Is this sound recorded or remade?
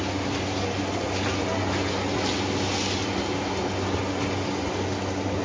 recorded